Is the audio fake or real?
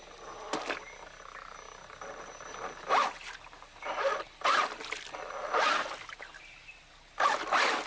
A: real